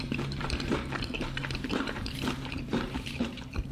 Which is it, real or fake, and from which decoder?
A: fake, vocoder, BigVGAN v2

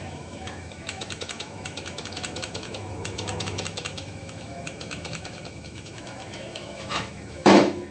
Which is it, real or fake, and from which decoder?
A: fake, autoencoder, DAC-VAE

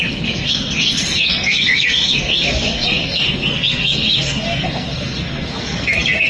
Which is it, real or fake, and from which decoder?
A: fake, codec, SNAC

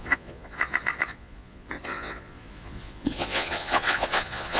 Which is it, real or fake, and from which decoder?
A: fake, vocoder, Vocos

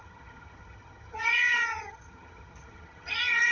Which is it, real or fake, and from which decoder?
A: fake, vocoder, HiFi-GAN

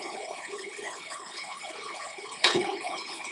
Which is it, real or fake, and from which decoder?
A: fake, codec, HILCodec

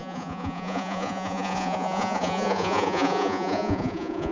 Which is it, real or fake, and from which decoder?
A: fake, vocoder, Vocos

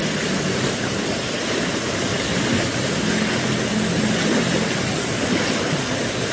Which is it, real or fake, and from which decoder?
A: real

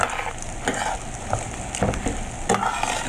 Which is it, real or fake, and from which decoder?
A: real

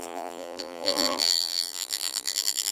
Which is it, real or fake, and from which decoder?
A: fake, vocoder, BigVGAN v2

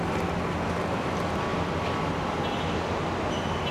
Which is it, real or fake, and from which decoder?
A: real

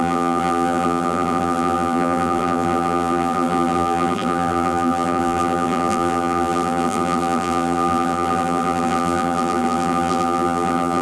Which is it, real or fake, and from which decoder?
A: fake, vocoder, BigVGAN v2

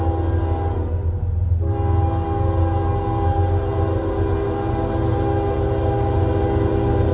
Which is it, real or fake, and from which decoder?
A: real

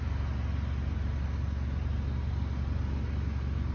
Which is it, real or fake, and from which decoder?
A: real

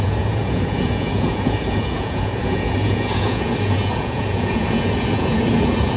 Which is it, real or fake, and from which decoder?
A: fake, vocoder, Vocos